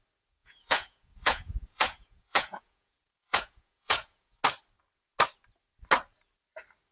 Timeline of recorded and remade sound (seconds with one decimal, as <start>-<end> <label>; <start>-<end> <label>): 0.0-0.4 recorded; 0.4-4.4 remade; 4.4-6.9 recorded